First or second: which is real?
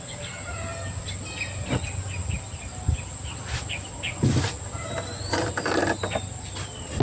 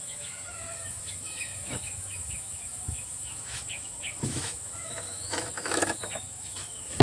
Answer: first